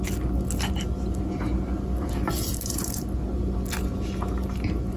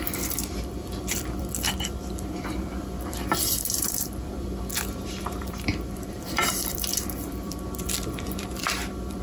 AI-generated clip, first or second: second